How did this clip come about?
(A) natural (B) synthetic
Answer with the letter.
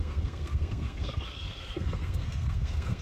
B